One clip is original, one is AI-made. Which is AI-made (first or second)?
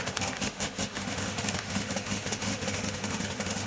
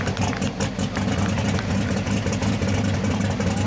first